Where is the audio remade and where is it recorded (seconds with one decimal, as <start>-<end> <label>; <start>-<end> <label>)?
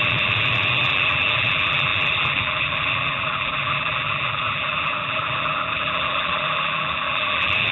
0.0-7.7 remade